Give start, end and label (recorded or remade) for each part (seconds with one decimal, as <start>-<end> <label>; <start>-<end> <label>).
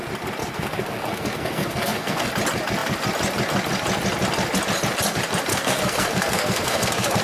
0.0-0.4 recorded; 0.4-2.3 remade; 2.3-5.5 recorded; 5.5-7.2 remade